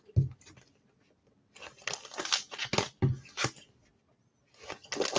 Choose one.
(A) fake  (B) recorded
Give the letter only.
B